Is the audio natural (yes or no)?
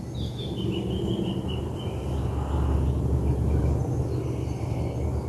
yes